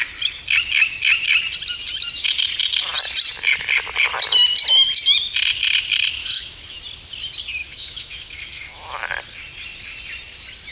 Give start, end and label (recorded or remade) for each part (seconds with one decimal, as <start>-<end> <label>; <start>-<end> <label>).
0.0-6.2 recorded; 6.2-6.8 remade; 6.8-7.6 recorded; 7.6-9.0 remade; 9.0-10.7 recorded